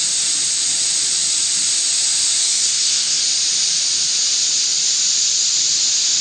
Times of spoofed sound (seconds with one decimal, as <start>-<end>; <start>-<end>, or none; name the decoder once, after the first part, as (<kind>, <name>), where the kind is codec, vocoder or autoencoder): 2.4-3.2 (codec, SNAC)